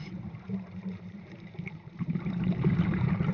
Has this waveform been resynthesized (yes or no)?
yes